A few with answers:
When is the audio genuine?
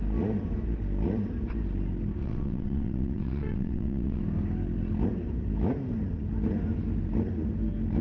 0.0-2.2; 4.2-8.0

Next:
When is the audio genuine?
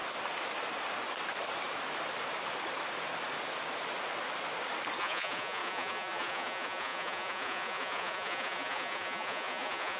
0.0-5.0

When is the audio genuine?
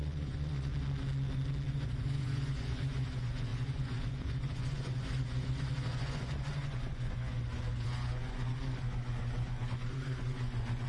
0.7-1.7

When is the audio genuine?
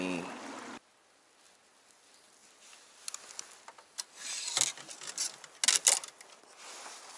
0.0-7.2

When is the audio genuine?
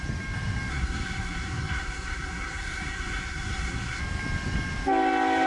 0.0-0.7; 4.0-5.5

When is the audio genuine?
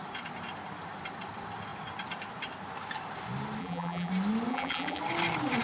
0.0-3.6; 4.1-4.5; 5.0-5.6